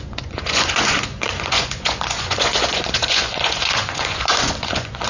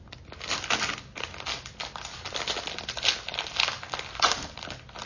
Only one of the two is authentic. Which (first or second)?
second